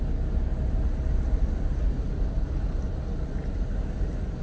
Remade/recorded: recorded